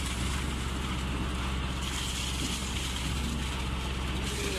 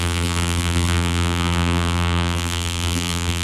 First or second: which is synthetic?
second